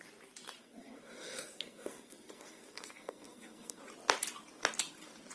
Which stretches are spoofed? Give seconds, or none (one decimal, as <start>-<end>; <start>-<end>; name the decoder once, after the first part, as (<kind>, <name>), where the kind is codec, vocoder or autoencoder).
0.6-3.8 (codec, SNAC)